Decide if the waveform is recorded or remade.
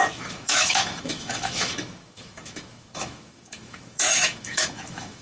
remade